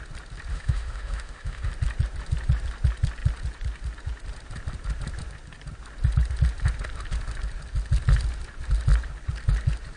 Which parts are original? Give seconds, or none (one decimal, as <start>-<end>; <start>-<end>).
0.0-0.5; 1.7-10.0